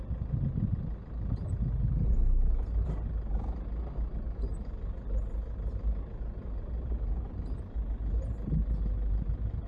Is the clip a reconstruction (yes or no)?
no